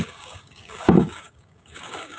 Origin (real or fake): fake